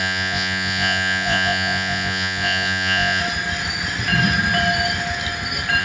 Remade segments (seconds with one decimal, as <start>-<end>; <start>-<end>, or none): 0.0-3.2